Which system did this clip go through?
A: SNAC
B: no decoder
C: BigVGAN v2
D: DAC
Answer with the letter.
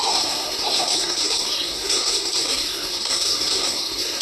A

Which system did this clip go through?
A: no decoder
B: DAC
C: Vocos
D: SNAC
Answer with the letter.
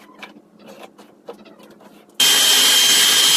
A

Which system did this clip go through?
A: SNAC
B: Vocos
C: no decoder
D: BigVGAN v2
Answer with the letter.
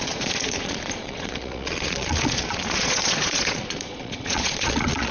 B